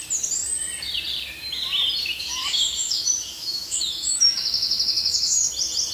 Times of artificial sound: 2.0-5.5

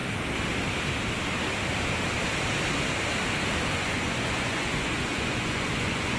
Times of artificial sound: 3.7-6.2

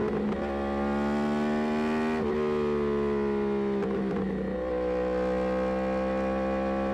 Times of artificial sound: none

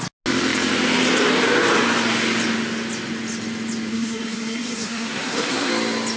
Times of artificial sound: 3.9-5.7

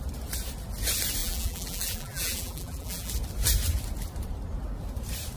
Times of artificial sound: 1.2-3.1